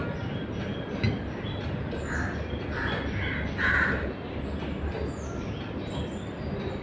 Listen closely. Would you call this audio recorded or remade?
recorded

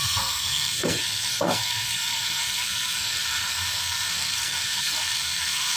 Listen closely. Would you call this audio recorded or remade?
remade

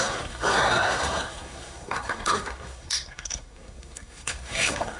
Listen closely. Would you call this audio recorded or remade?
remade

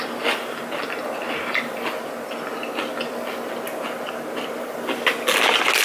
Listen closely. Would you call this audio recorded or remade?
recorded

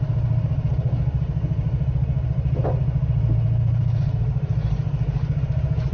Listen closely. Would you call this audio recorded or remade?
recorded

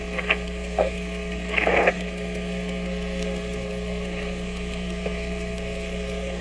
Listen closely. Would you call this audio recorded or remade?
remade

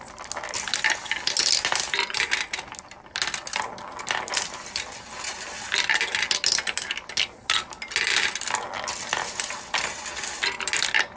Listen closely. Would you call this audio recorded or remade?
recorded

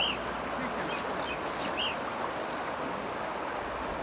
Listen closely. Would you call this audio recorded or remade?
recorded